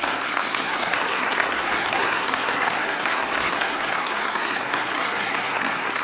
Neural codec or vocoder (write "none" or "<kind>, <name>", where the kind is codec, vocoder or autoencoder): codec, SNAC